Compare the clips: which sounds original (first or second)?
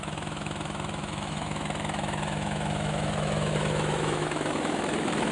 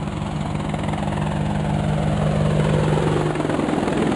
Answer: second